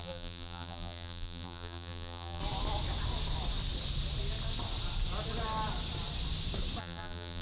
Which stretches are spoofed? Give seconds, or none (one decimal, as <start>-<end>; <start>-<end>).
0.0-2.4; 6.8-7.4